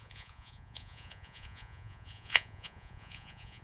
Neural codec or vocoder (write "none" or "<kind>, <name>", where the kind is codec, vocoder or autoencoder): vocoder, Vocos